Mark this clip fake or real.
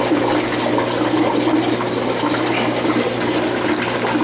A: real